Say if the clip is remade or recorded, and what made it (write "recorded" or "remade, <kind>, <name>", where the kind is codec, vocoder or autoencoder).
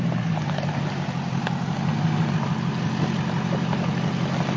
recorded